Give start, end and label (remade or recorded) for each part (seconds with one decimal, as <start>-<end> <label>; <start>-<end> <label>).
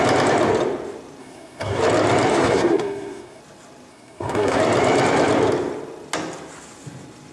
0.0-1.2 recorded; 1.2-1.8 remade; 1.8-2.3 recorded; 2.3-3.4 remade; 3.4-3.9 recorded; 3.9-4.6 remade; 4.6-7.3 recorded